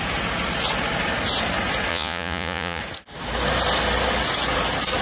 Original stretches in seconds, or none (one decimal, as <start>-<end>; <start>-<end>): 0.0-1.9; 2.8-5.0